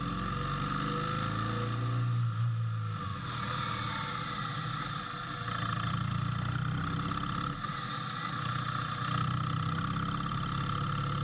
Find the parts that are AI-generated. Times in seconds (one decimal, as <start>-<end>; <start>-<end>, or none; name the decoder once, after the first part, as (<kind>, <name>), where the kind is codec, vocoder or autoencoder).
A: none

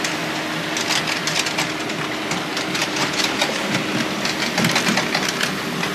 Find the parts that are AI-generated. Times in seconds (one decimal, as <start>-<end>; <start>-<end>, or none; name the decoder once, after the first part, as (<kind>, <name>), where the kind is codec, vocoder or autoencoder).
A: 2.8-3.8 (vocoder, BigVGAN v2)

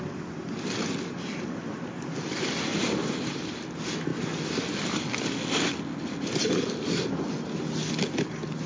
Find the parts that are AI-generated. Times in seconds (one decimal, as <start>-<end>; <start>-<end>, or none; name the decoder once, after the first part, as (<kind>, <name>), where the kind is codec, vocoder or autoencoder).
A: 2.7-3.5 (vocoder, BigVGAN v2)

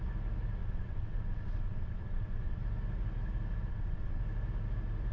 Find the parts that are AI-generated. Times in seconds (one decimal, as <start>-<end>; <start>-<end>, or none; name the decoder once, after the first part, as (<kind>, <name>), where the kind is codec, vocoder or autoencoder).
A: 0.6-2.6 (vocoder, WaveNeXt); 3.7-4.2

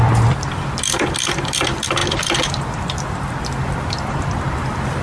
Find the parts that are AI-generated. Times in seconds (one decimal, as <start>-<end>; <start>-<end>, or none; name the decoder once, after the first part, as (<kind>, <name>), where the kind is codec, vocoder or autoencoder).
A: 0.0-2.0 (vocoder, BigVGAN v2); 2.7-5.0

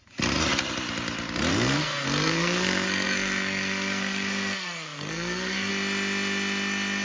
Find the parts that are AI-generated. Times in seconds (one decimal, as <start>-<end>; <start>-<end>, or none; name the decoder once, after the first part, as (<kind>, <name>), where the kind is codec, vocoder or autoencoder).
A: 1.5-5.7 (codec, SNAC)

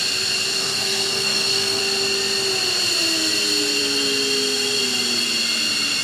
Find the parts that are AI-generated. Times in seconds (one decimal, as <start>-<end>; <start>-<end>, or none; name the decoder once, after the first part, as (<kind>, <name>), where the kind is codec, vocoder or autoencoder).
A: 0.6-1.8 (codec, SNAC)